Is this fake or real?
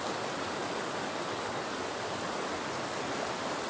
real